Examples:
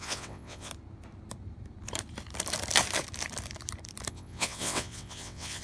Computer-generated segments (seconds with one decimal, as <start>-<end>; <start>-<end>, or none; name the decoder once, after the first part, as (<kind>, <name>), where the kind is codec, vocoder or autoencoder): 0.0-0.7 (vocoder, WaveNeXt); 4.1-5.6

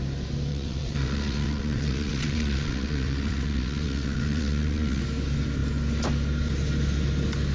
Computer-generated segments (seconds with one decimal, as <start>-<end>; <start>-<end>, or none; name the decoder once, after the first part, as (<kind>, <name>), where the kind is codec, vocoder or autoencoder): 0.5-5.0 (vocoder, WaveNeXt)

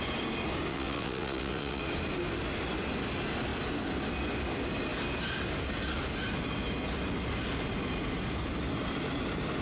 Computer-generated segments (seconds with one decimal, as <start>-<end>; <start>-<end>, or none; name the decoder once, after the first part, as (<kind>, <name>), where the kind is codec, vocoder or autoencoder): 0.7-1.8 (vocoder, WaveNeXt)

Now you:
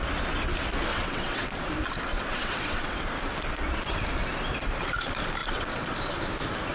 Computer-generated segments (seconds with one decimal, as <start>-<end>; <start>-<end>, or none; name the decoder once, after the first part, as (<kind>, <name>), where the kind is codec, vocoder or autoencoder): 0.9-1.5 (vocoder, WaveNeXt); 2.1-3.0; 5.4-5.9